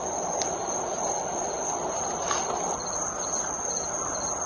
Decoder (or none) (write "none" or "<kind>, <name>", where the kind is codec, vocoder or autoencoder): none